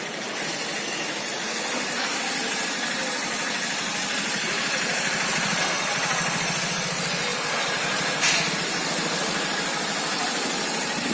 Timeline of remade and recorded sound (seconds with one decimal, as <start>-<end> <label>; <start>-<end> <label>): 0.0-11.1 recorded